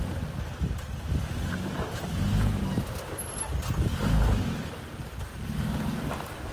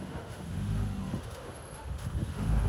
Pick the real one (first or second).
first